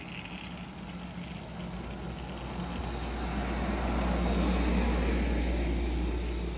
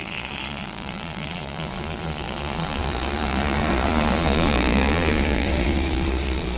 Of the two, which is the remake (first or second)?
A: second